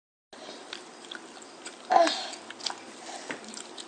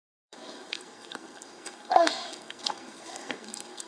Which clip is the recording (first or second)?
first